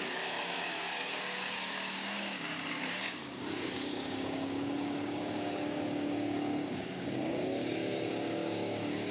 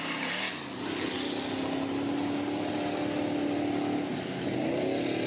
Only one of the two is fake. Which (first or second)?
first